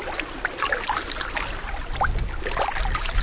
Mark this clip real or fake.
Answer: real